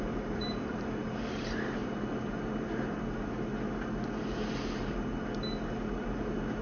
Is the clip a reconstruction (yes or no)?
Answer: yes